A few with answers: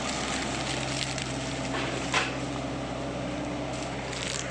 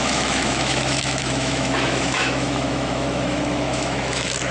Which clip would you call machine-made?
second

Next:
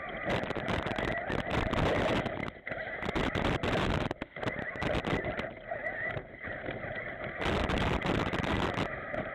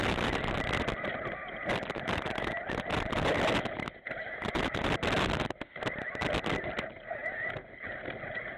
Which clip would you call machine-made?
first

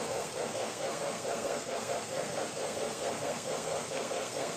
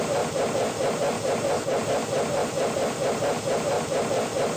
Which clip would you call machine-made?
first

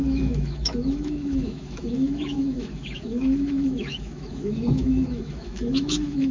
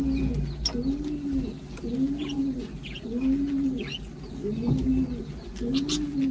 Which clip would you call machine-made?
first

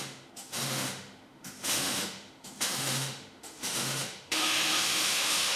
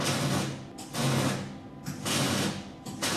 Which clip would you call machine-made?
first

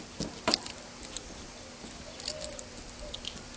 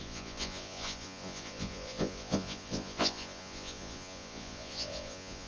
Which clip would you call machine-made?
second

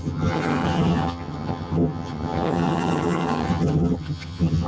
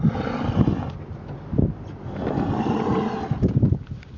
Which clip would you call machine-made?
first